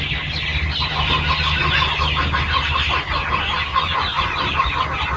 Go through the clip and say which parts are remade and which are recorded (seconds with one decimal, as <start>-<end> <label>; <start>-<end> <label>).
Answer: 0.0-3.7 recorded; 3.7-4.4 remade; 4.4-5.2 recorded